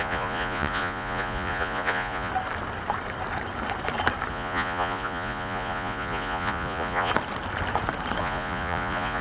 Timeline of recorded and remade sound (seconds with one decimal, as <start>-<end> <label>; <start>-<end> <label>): 0.0-2.3 remade; 2.3-4.3 recorded; 4.3-7.1 remade; 7.1-8.2 recorded; 8.2-9.2 remade